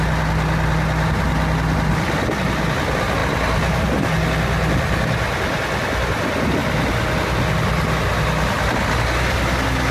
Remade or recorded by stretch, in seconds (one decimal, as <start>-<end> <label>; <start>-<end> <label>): 0.0-9.9 recorded